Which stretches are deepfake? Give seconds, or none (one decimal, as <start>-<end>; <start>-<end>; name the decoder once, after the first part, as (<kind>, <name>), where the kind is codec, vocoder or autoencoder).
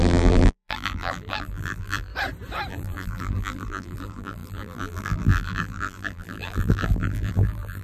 0.0-2.1 (vocoder, BigVGAN v2); 2.7-7.8